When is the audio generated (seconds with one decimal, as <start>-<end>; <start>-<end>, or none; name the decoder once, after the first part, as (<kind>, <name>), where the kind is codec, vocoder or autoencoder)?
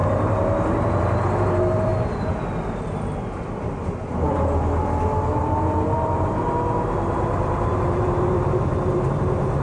0.0-1.9 (vocoder, BigVGAN v2); 5.4-9.6